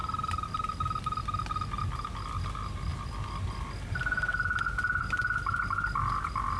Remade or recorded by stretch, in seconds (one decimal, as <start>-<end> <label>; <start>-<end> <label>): 0.0-6.6 recorded